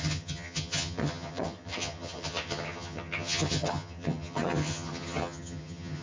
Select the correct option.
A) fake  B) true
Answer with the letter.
A